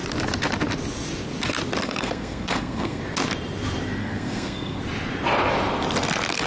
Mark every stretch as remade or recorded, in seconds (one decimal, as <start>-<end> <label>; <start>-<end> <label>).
0.0-1.8 recorded; 1.8-3.0 remade; 3.0-4.0 recorded; 4.0-4.8 remade; 4.8-6.5 recorded